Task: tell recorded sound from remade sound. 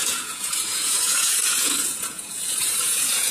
remade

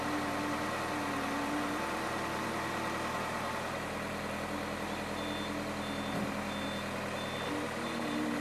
recorded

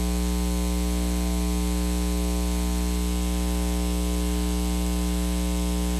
recorded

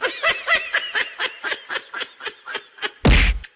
recorded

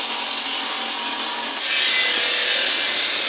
recorded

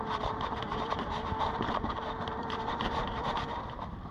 remade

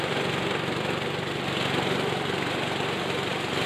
recorded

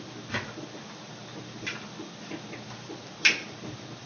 recorded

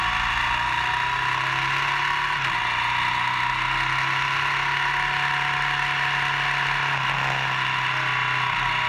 recorded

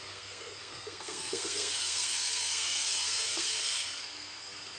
remade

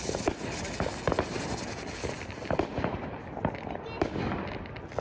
recorded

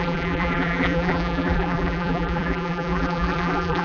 remade